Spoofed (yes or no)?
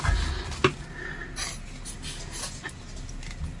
no